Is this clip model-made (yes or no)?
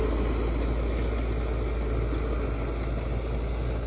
no